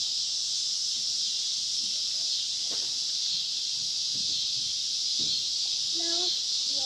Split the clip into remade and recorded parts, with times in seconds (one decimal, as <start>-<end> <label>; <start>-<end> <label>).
0.0-6.8 recorded